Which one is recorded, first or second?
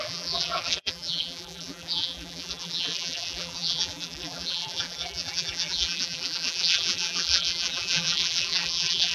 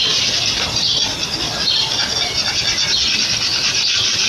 second